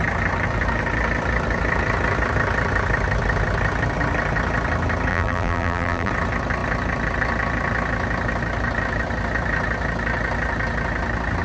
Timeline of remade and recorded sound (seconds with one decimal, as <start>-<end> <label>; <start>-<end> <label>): 0.0-5.1 recorded; 5.1-6.1 remade; 6.1-11.4 recorded